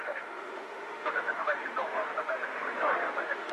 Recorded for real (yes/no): no